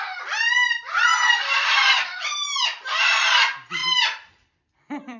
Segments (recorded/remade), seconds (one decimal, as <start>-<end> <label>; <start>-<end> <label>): 0.0-3.8 remade; 3.8-4.3 recorded; 4.3-5.2 remade